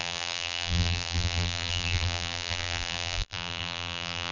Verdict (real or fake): fake